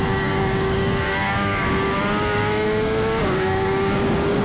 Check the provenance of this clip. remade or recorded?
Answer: remade